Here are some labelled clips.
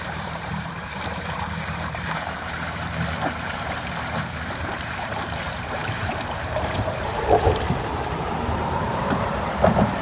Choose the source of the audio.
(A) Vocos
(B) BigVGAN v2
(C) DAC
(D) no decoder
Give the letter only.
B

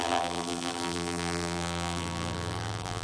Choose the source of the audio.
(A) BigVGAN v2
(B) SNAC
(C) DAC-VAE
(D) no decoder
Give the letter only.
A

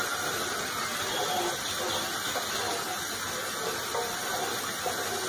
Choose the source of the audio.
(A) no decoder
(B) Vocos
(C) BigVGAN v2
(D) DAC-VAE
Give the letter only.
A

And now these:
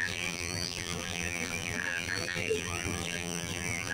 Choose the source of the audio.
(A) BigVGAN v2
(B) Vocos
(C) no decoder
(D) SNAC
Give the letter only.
A